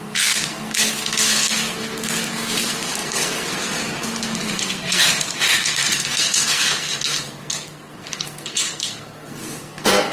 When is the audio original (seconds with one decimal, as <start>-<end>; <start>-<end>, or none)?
none